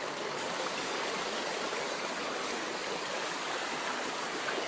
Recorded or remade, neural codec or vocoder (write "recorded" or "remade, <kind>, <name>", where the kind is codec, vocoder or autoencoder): remade, codec, DAC